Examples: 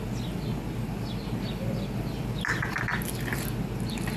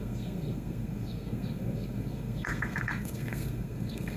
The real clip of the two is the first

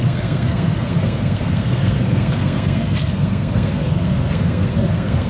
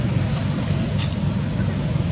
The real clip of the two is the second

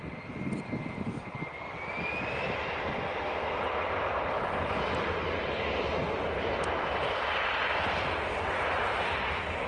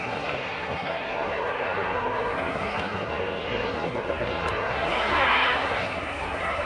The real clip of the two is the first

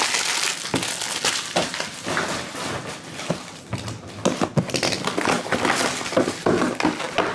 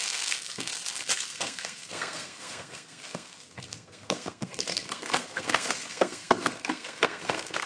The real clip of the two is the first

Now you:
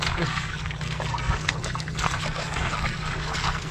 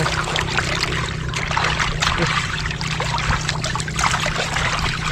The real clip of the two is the second